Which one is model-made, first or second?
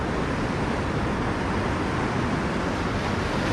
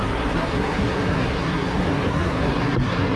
second